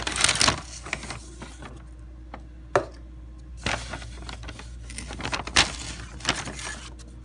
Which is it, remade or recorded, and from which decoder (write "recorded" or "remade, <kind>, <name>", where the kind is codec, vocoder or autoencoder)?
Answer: recorded